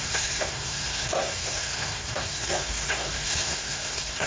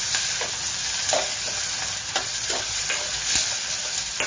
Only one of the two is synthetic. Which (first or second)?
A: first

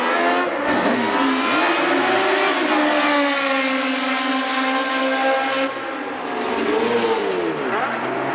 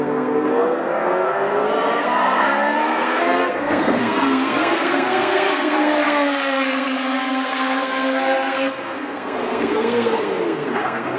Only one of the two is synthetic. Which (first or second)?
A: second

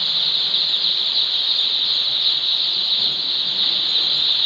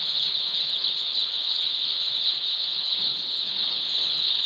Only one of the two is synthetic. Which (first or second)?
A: second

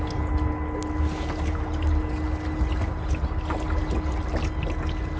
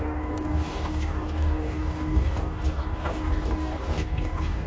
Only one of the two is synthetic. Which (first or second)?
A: second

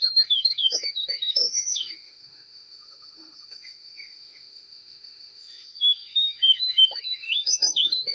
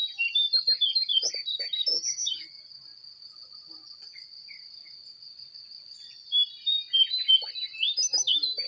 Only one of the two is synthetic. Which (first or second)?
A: first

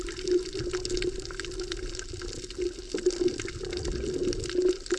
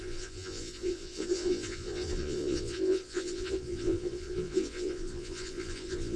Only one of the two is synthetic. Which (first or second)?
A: second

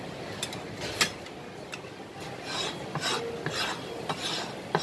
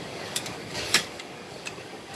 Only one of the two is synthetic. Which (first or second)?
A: second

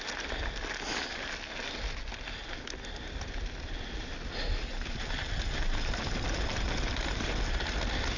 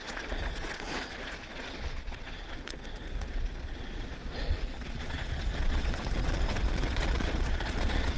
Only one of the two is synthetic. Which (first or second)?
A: second